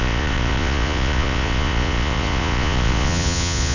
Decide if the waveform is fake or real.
fake